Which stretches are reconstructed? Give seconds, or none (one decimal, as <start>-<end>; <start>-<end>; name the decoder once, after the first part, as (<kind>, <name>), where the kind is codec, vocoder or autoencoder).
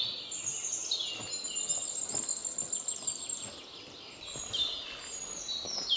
none